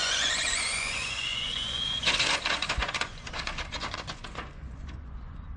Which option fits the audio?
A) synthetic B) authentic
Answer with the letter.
A